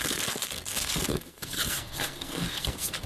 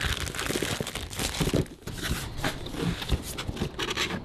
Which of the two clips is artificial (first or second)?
first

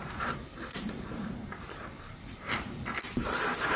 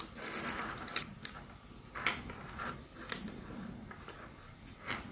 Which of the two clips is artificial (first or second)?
first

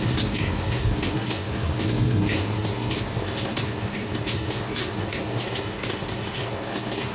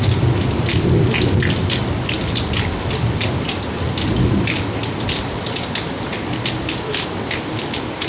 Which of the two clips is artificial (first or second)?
first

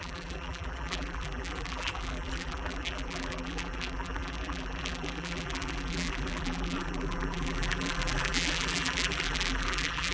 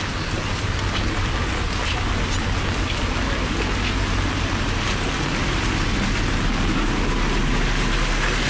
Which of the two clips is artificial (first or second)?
first